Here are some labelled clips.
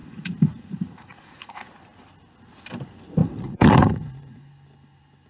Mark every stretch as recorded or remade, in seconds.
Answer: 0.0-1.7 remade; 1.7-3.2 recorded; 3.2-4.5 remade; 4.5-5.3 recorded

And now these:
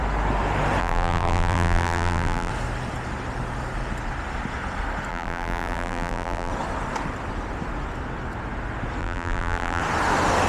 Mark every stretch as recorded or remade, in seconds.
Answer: 0.0-0.8 recorded; 0.8-2.5 remade; 2.5-5.1 recorded; 5.1-6.5 remade; 6.5-9.0 recorded; 9.0-9.8 remade; 9.8-10.5 recorded

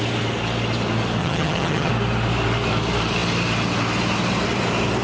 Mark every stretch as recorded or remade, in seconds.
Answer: 0.0-1.2 recorded; 1.2-1.9 remade; 1.9-5.0 recorded

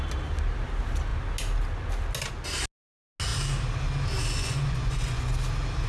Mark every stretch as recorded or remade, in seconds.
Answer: 0.0-4.4 recorded; 4.4-5.3 remade; 5.3-5.9 recorded

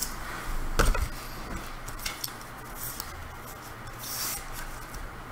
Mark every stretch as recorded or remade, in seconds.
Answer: 0.0-5.3 recorded

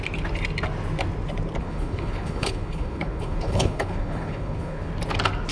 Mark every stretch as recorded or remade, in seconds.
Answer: 0.0-1.6 recorded; 1.6-4.9 remade; 4.9-5.5 recorded

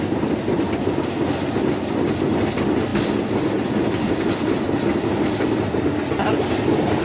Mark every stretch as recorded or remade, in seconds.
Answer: 0.0-7.0 recorded